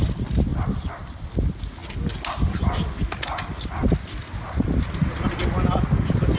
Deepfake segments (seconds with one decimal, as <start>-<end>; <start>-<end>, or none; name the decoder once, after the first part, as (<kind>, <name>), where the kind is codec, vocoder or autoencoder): 0.5-1.3 (vocoder, BigVGAN v2)